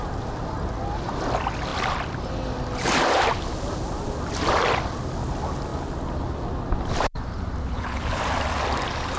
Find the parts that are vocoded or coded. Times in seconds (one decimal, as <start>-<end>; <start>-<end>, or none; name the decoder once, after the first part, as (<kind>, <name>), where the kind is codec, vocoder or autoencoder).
7.6-8.2 (codec, HILCodec)